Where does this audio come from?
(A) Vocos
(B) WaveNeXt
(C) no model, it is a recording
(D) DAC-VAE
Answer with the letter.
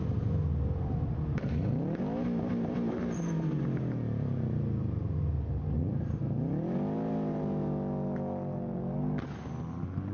C